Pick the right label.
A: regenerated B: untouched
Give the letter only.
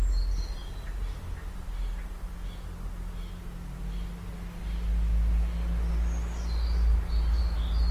B